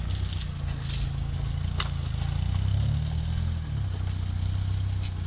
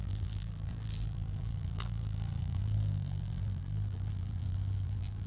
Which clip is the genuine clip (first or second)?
first